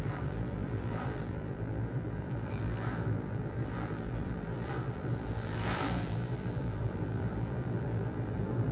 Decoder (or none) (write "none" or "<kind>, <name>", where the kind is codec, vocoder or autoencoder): vocoder, BigVGAN v2